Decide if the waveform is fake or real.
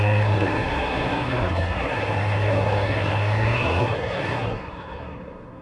fake